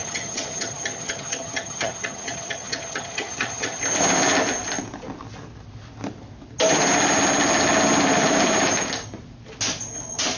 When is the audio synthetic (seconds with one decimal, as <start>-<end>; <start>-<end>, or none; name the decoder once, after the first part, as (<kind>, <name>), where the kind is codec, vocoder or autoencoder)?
0.0-3.8 (vocoder, HiFi-GAN)